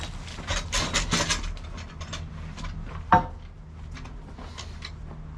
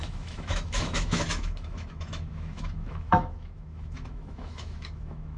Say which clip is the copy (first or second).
second